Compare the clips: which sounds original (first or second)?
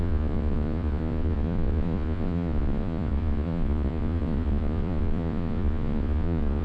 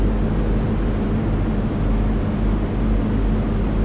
second